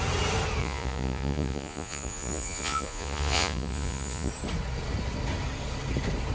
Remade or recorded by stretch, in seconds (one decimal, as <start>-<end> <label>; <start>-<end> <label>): 0.0-0.6 recorded; 0.6-4.3 remade; 4.3-6.3 recorded